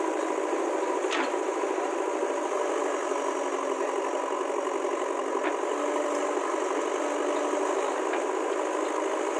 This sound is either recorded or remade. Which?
recorded